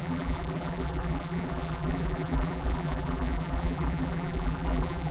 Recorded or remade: remade